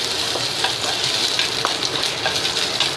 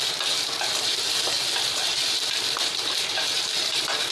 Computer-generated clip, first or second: second